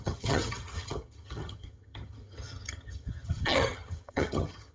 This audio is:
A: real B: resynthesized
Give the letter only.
B